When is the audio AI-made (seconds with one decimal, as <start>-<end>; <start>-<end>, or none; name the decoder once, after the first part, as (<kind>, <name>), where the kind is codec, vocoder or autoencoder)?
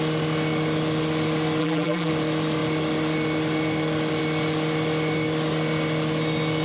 1.6-2.1 (vocoder, BigVGAN v2)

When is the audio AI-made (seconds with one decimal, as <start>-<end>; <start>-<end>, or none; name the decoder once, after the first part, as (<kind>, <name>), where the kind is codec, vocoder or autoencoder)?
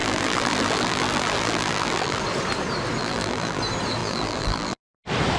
0.0-2.2 (vocoder, BigVGAN v2); 3.0-3.6; 4.0-4.8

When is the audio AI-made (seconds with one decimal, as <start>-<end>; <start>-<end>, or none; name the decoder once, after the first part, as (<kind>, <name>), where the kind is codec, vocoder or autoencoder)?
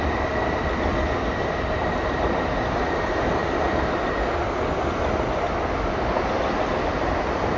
none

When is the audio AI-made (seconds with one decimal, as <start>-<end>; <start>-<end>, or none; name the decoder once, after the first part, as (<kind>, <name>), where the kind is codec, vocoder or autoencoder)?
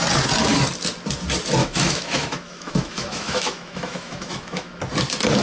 1.6-4.8 (autoencoder, DAC-VAE)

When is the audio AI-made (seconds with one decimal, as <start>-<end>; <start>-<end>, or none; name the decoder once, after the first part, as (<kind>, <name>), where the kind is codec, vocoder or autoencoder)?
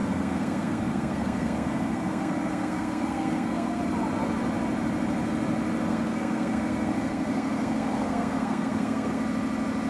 0.0-3.8 (codec, SNAC); 5.9-9.2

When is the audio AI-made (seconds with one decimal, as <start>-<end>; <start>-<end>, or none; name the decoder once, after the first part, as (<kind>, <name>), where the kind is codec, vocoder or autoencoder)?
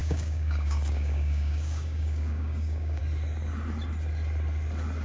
0.0-3.0 (codec, DAC)